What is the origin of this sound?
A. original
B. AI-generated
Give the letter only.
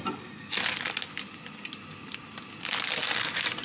A